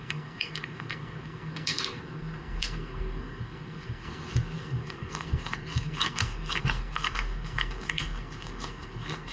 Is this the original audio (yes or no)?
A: no